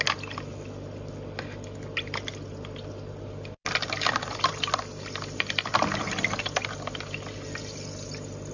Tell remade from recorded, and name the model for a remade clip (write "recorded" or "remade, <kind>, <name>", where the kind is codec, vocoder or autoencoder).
recorded